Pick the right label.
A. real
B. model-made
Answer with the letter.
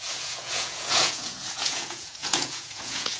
B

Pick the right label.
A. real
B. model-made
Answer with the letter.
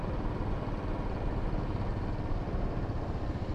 A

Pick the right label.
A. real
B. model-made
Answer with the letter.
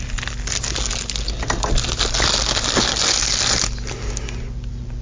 A